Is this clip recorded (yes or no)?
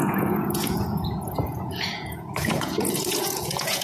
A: no